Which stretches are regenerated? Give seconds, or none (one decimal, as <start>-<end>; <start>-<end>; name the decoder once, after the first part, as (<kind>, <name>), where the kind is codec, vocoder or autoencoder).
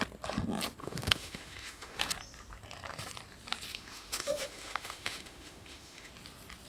0.8-2.1 (autoencoder, DAC-VAE); 3.7-6.1